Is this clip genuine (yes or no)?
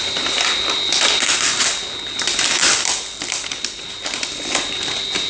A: yes